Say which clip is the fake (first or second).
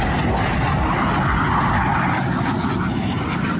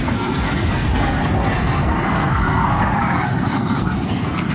second